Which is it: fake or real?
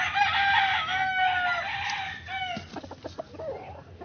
real